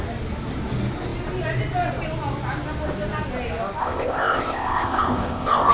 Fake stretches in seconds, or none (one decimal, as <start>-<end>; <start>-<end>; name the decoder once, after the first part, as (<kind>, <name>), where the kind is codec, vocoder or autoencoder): 3.8-5.7 (codec, ZipCodec)

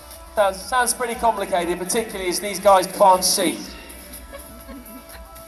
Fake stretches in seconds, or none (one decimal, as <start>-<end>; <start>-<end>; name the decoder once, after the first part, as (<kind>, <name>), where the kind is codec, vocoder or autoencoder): 2.9-4.5 (codec, SNAC)

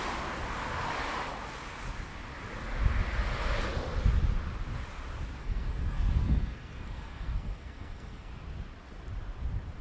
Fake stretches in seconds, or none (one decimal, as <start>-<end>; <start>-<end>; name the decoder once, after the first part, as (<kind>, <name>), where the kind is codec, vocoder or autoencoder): 5.4-8.3 (codec, SNAC)

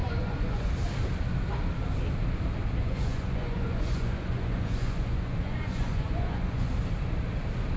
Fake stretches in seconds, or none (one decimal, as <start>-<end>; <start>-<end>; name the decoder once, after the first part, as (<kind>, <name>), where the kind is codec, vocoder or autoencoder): 0.0-0.7 (vocoder, Vocos); 2.8-6.7

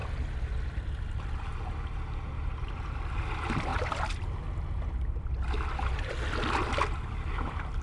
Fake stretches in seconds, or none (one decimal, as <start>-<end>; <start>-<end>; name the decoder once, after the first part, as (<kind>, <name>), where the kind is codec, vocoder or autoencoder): none

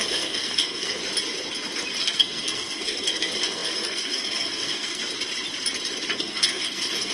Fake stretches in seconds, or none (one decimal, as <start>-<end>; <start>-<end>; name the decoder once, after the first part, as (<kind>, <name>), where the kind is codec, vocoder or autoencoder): 0.0-1.0 (codec, SNAC); 2.0-5.0; 6.2-7.1